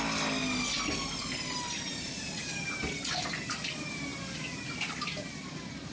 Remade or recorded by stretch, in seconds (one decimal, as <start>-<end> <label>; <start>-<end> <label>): 0.0-5.9 recorded